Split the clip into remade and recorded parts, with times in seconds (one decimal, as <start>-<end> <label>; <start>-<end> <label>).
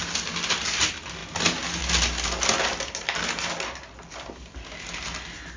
0.0-5.6 recorded